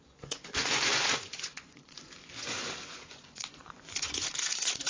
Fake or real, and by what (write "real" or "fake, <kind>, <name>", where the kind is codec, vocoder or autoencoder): fake, vocoder, Vocos